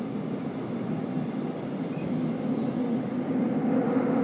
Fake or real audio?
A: real